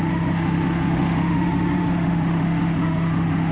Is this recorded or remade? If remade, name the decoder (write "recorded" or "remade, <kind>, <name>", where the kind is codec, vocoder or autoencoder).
remade, autoencoder, DAC-VAE